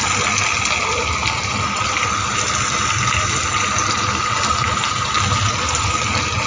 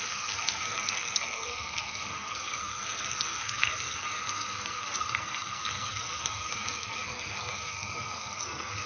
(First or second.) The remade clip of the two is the second